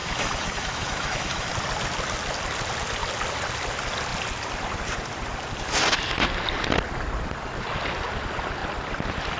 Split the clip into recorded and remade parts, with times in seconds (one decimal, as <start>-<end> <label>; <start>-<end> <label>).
0.0-1.5 remade; 1.5-9.4 recorded